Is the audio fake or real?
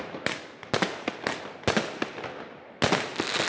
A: real